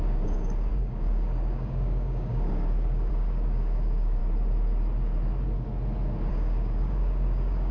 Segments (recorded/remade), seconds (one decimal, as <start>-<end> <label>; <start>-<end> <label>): 0.0-4.2 remade; 4.2-6.3 recorded; 6.3-7.7 remade